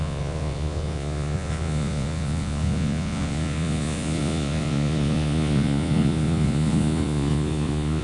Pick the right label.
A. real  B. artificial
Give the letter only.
B